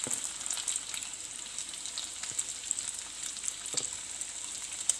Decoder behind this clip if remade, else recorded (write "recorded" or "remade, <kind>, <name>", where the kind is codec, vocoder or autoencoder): recorded